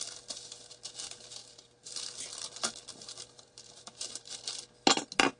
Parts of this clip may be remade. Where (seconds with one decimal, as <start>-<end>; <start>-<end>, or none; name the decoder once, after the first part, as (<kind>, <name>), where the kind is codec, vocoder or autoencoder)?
1.4-1.9 (vocoder, BigVGAN v2); 2.9-4.5